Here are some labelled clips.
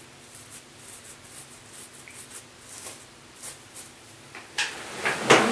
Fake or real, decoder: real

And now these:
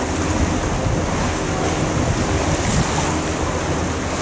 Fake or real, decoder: real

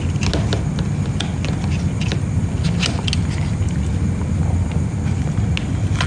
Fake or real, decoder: real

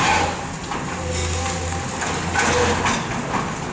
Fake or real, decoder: real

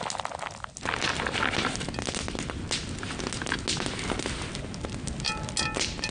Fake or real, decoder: real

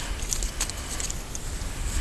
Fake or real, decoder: real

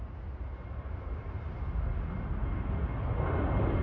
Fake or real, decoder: real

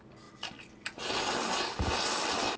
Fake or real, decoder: real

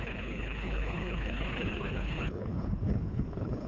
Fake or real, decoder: fake, codec, HILCodec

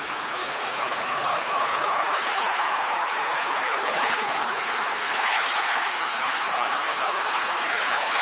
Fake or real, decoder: fake, codec, HILCodec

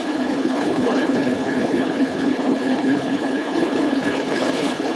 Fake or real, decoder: fake, codec, HILCodec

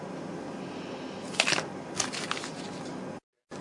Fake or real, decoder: real